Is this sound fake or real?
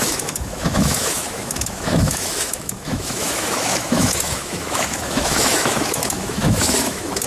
fake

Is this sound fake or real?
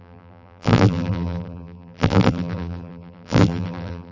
fake